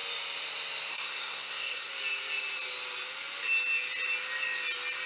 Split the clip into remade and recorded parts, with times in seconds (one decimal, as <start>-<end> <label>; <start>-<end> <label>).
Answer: 0.0-0.9 recorded; 0.9-1.9 remade; 1.9-5.1 recorded

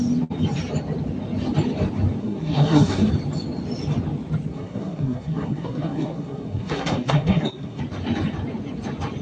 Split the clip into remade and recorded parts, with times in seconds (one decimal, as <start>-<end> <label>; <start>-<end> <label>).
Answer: 0.0-2.2 recorded; 2.2-3.1 remade; 3.1-4.5 recorded; 4.5-7.8 remade; 7.8-9.2 recorded

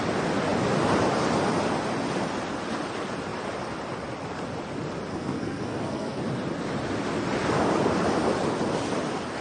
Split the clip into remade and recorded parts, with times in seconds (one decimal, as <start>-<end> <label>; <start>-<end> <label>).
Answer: 0.0-5.1 recorded; 5.1-6.2 remade; 6.2-9.4 recorded

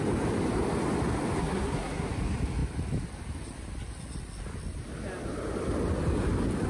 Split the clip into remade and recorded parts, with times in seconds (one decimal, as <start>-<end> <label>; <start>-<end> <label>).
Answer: 0.0-1.4 recorded; 1.4-2.1 remade; 2.1-6.7 recorded

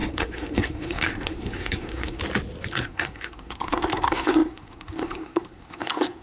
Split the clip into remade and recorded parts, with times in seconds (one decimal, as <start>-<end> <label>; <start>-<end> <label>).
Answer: 0.0-2.2 remade; 2.2-2.7 recorded; 2.7-6.2 remade

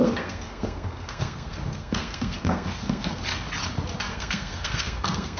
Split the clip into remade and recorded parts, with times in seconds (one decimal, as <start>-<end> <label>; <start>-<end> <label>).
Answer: 0.0-3.2 remade; 3.2-4.1 recorded; 4.1-5.4 remade

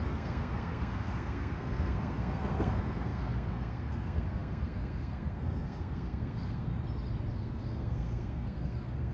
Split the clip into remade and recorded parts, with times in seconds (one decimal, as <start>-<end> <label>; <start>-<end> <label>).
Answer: 0.0-6.7 remade; 6.7-7.3 recorded; 7.3-9.1 remade

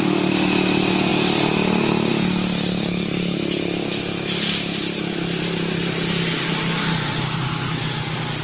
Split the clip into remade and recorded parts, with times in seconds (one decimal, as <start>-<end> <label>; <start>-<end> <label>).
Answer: 0.0-8.4 recorded